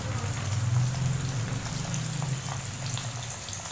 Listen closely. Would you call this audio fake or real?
real